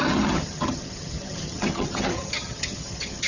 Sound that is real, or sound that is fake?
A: fake